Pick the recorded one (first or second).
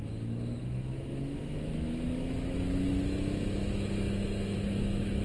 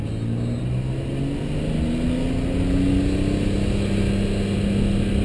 second